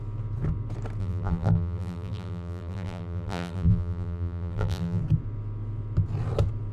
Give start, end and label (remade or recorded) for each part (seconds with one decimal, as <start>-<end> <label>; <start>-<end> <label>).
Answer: 0.0-1.0 recorded; 1.0-5.0 remade; 5.0-6.7 recorded